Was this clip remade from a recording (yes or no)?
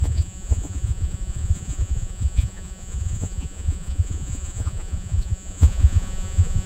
yes